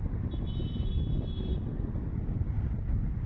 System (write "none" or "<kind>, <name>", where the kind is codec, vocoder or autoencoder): none